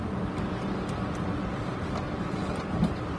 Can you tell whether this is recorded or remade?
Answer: recorded